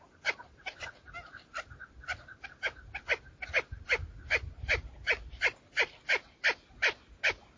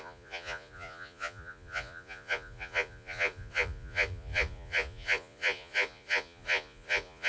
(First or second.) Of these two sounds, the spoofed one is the second